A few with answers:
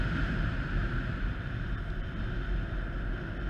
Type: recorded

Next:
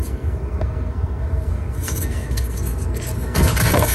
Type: remade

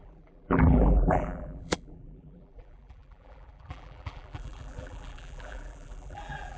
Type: remade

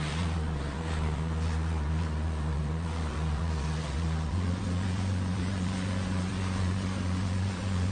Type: remade